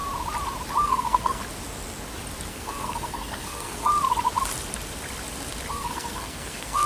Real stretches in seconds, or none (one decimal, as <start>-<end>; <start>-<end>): 0.0-0.8; 1.4-2.5; 3.9-5.7